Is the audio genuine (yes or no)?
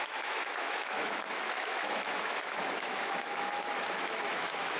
no